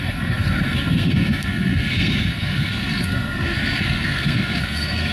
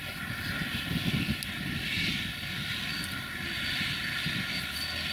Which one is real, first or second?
second